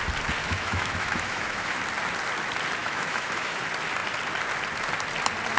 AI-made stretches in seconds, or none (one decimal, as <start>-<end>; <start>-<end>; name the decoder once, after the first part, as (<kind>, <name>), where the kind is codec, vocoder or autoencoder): 0.4-1.8 (autoencoder, DAC-VAE); 2.8-3.6

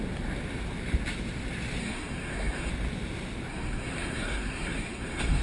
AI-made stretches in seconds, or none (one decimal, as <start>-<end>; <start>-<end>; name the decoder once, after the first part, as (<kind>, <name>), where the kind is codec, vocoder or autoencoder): 1.8-2.7 (codec, SNAC); 3.5-5.4